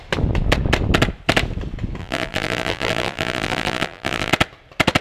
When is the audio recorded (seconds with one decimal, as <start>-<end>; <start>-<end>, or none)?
0.0-2.0; 4.3-5.0